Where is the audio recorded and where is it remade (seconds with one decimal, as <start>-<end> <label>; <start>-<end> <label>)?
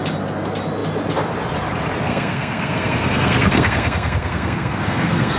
0.0-2.1 recorded; 2.1-5.4 remade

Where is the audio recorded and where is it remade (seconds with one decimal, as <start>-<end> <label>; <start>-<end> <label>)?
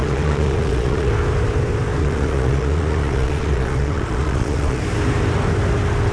0.0-1.1 remade; 1.1-2.0 recorded; 2.0-4.8 remade; 4.8-6.1 recorded